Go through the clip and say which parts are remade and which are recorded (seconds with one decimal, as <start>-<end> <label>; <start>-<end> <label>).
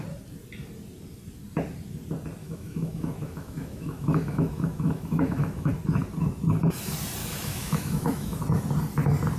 0.0-2.4 recorded; 2.4-5.7 remade; 5.7-7.2 recorded; 7.2-8.4 remade; 8.4-9.4 recorded